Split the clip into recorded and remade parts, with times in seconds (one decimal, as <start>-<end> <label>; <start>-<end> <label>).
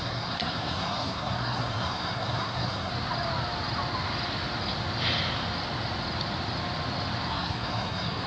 0.0-2.9 remade; 2.9-7.3 recorded; 7.3-8.3 remade